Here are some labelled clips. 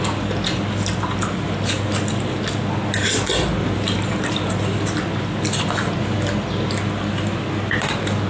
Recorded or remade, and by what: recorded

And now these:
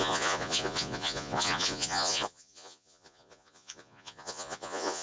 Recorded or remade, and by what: remade, vocoder, Vocos